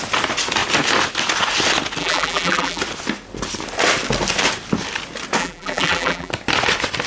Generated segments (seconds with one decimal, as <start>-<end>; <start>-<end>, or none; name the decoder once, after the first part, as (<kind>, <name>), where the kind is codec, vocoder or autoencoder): 2.0-2.8 (vocoder, BigVGAN v2); 5.4-6.3